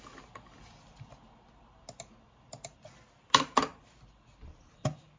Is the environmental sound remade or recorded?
recorded